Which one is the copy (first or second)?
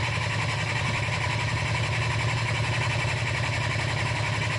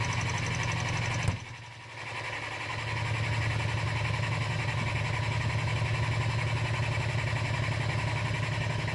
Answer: first